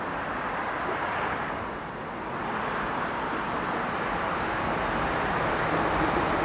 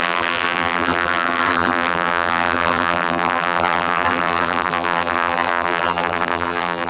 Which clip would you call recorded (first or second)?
first